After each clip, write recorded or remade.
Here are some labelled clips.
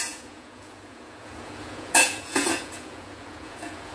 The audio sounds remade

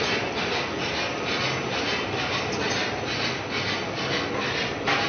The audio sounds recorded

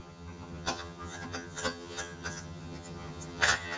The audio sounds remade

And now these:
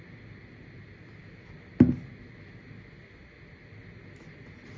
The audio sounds recorded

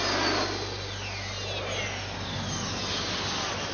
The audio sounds recorded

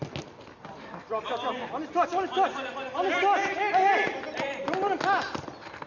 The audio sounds recorded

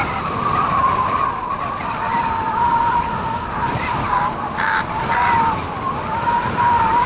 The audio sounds recorded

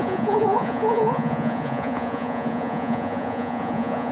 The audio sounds remade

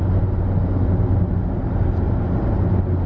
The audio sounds recorded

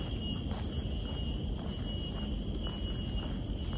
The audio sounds recorded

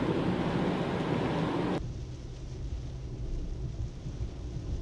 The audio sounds recorded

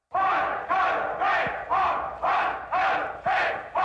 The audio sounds recorded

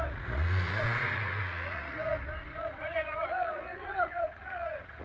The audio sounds remade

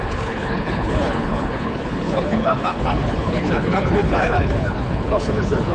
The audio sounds remade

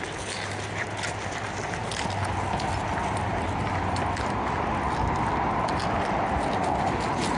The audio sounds recorded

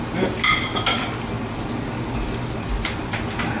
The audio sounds recorded